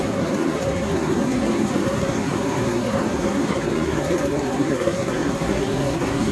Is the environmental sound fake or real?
fake